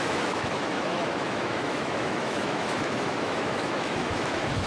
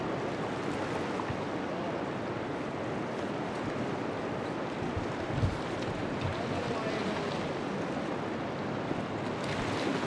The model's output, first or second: first